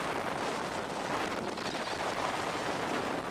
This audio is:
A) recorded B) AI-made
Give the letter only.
A